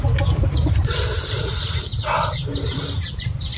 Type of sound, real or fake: real